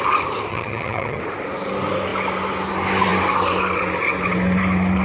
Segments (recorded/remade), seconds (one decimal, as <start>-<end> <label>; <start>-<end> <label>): 0.0-0.5 recorded; 0.5-1.2 remade; 1.2-5.0 recorded